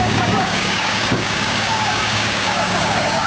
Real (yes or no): no